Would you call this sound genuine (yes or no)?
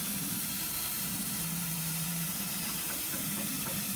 no